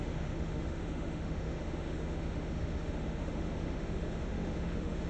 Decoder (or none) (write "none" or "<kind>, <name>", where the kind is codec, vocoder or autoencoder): autoencoder, DAC-VAE